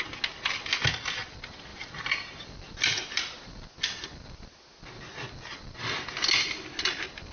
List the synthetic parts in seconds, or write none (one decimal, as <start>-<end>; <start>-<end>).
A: 1.7-3.7